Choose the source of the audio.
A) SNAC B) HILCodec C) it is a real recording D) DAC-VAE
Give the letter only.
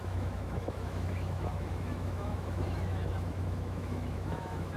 D